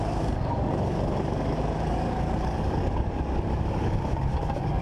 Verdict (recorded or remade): remade